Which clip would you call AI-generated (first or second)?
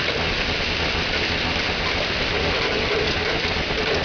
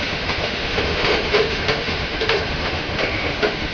second